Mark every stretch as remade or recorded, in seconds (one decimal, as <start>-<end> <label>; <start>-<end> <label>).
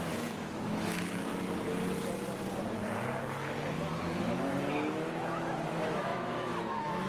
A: 0.0-1.3 remade; 1.3-4.7 recorded; 4.7-7.1 remade